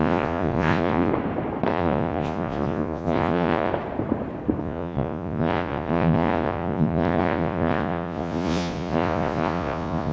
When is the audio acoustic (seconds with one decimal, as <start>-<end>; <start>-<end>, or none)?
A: 1.1-1.7; 3.7-4.6